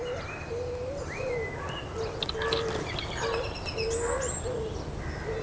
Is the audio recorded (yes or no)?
yes